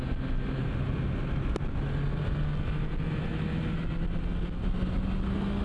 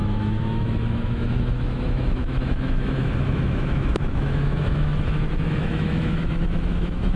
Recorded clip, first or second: first